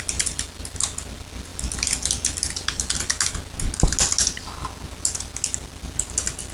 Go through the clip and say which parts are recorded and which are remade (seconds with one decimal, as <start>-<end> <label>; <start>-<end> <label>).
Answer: 0.0-6.5 recorded